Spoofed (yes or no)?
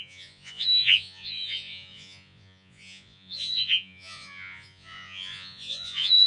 yes